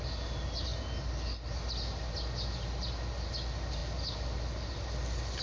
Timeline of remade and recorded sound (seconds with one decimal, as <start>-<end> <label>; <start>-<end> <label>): 0.0-5.4 recorded